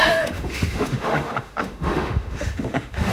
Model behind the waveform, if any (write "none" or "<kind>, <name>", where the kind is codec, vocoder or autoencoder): autoencoder, DAC-VAE